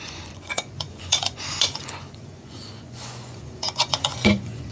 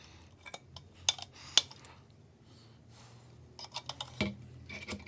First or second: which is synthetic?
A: first